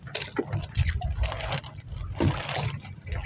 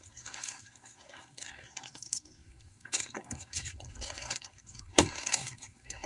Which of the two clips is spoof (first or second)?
second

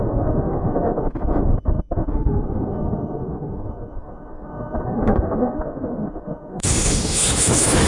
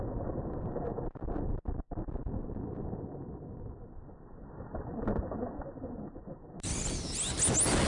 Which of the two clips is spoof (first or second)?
first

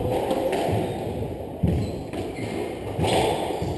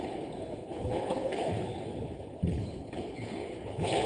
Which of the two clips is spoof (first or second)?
second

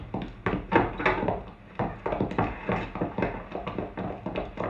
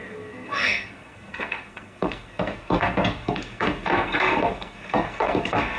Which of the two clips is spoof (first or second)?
second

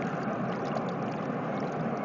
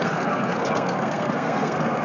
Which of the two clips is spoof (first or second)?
second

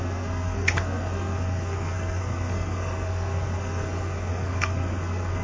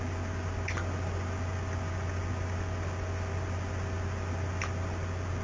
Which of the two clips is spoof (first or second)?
first